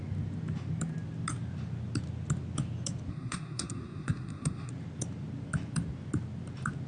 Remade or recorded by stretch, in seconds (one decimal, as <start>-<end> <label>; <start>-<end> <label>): 0.0-3.1 recorded; 3.1-4.7 remade; 4.7-6.9 recorded